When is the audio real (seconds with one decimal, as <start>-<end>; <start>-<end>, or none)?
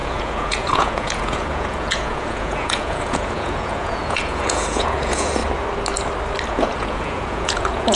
5.4-6.5